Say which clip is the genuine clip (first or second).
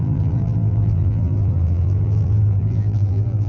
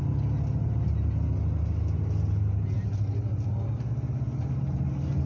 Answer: second